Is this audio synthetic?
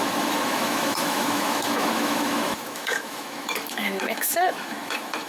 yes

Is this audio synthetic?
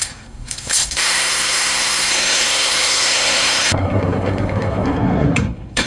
yes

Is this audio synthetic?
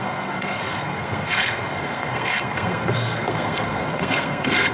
yes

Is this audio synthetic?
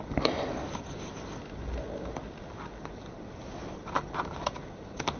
no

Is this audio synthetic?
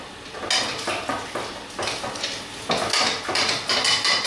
no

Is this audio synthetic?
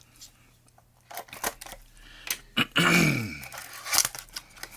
no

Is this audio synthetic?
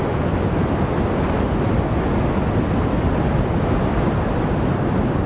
no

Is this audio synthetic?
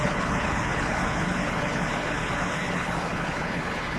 yes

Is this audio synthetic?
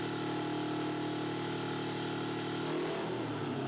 no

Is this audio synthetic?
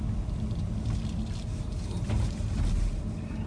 no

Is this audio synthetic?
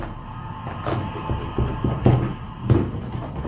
no